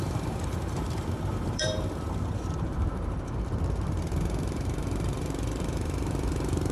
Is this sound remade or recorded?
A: remade